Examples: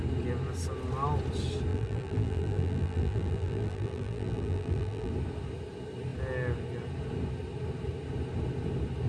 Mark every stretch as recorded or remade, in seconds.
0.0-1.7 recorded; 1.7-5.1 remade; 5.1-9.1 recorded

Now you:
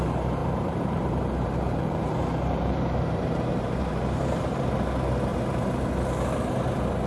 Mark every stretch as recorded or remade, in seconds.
0.0-0.4 recorded; 0.4-4.7 remade; 4.7-5.3 recorded; 5.3-5.8 remade; 5.8-7.1 recorded